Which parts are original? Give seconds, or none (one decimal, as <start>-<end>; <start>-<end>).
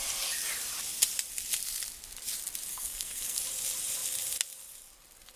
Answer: 0.0-2.7; 3.4-5.4